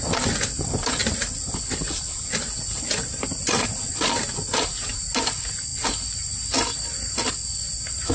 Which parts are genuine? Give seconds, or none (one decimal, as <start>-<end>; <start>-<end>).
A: 0.0-8.1